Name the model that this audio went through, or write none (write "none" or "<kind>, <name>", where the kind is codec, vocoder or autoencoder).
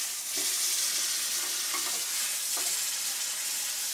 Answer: none